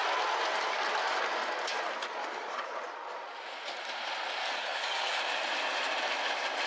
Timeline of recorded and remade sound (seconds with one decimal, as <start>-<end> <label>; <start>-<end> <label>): 0.0-2.2 recorded; 2.2-2.8 remade; 2.8-4.4 recorded; 4.4-5.2 remade; 5.2-6.7 recorded